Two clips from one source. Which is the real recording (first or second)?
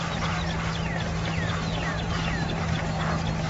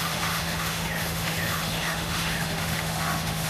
first